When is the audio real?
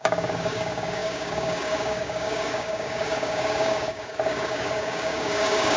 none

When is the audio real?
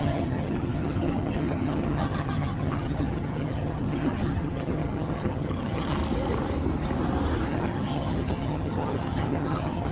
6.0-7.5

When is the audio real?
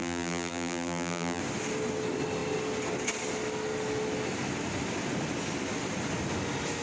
1.4-6.8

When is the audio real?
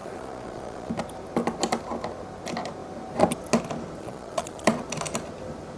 0.9-4.0; 4.7-5.8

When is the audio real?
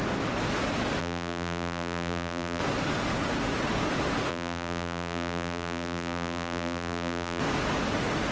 0.0-1.0; 2.6-4.3; 7.4-8.3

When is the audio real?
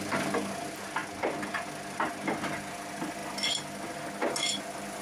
0.0-5.0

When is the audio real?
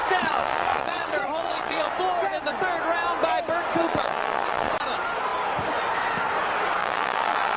1.9-3.8; 4.7-6.8